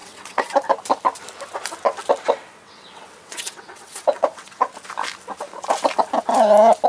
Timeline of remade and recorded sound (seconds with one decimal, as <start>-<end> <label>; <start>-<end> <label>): 0.0-0.6 remade; 0.6-2.4 recorded; 2.4-4.7 remade; 4.7-6.9 recorded

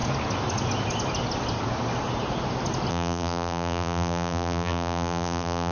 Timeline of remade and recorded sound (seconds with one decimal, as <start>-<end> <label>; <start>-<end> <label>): 0.0-2.9 recorded; 2.9-5.7 remade

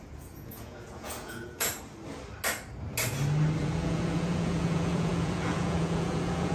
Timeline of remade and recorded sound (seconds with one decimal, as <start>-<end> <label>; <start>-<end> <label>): 0.0-1.7 remade; 1.7-3.6 recorded; 3.6-6.5 remade

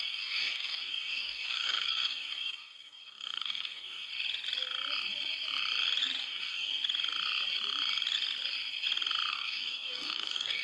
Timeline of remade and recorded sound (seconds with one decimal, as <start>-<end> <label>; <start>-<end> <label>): 0.0-4.1 remade; 4.1-6.2 recorded; 6.2-6.7 remade; 6.7-9.3 recorded; 9.3-10.6 remade